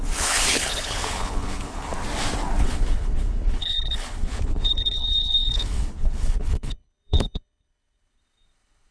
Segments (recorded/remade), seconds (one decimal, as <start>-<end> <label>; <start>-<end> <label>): 0.0-1.9 remade; 1.9-2.6 recorded; 2.6-8.9 remade